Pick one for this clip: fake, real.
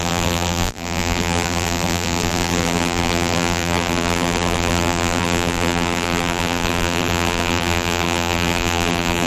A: fake